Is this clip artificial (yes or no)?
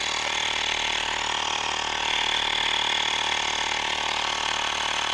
no